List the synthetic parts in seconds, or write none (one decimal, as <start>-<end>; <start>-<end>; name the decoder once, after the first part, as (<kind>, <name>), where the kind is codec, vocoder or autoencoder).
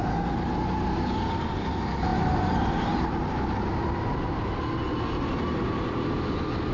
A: none